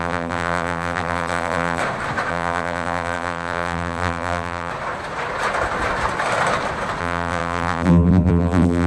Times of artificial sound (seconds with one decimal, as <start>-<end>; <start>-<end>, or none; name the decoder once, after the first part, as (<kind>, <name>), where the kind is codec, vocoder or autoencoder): 0.0-1.8 (vocoder, BigVGAN v2); 2.3-4.7; 7.0-8.9